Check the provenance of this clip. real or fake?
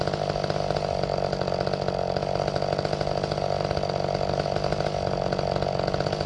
real